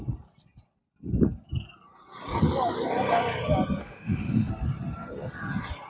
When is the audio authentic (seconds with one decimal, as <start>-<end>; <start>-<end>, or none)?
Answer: 0.0-3.8; 4.5-5.9